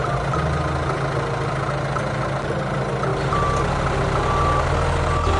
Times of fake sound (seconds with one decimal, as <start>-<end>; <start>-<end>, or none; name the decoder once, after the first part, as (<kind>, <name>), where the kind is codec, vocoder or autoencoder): none

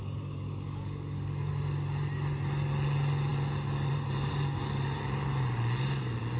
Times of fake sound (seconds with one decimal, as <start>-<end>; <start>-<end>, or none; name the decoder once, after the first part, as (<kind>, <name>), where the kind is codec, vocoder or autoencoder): 0.0-1.5 (codec, DAC)

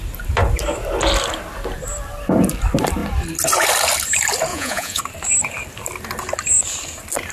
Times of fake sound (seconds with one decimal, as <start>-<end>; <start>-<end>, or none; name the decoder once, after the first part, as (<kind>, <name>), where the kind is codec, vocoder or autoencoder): 4.5-5.0 (vocoder, Vocos)

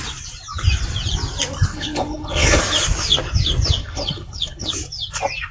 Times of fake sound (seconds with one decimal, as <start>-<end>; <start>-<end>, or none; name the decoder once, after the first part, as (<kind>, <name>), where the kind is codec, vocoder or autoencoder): 1.7-2.6 (codec, HILCodec); 3.8-4.7

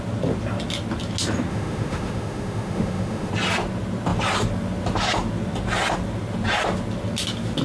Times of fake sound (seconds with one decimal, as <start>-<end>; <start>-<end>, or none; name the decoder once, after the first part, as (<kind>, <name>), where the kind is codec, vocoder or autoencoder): 1.5-3.3 (autoencoder, DAC-VAE)

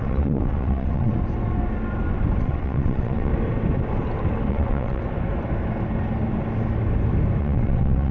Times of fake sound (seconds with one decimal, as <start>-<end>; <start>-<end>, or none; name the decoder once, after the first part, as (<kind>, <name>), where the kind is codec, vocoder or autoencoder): 0.0-1.1 (vocoder, WaveNeXt); 2.4-3.3; 4.5-5.0; 7.4-8.1